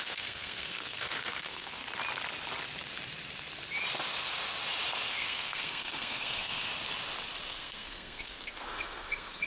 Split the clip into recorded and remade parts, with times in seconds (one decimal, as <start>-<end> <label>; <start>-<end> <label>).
0.0-1.8 remade; 1.8-5.1 recorded; 5.1-6.7 remade; 6.7-7.4 recorded; 7.4-9.5 remade